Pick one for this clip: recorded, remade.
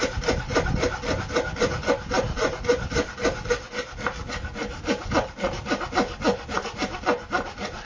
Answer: recorded